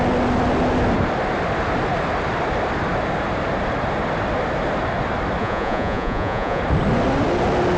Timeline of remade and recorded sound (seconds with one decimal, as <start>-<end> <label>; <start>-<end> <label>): 0.0-5.4 recorded; 5.4-6.6 remade; 6.6-7.8 recorded

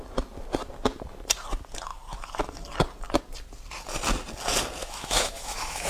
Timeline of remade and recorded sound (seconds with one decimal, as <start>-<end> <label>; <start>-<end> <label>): 0.0-4.8 recorded; 4.8-5.9 remade

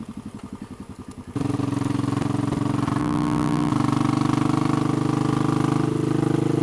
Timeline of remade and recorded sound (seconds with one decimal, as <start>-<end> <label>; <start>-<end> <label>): 0.0-3.0 recorded; 3.0-3.7 remade; 3.7-6.6 recorded

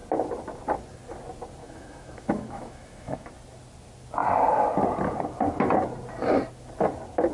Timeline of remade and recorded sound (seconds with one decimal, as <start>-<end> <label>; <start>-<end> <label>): 0.0-1.6 recorded; 1.6-3.3 remade; 3.3-7.3 recorded

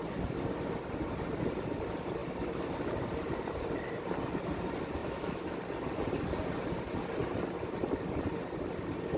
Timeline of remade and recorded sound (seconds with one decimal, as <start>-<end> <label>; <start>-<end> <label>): 0.0-5.0 recorded; 5.0-5.6 remade; 5.6-9.2 recorded

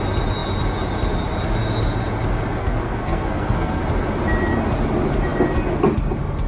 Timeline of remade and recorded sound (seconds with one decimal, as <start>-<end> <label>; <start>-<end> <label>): 0.0-2.6 recorded; 2.6-3.8 remade; 3.8-6.5 recorded

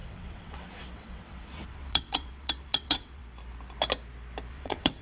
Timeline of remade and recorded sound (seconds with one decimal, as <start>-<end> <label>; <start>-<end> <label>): 0.0-3.2 remade; 3.2-4.5 recorded; 4.5-5.0 remade